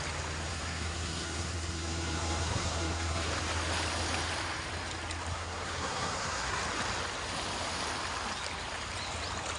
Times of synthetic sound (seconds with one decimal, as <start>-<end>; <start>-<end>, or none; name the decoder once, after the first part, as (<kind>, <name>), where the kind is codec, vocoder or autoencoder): 0.5-3.3 (codec, SNAC); 5.3-6.6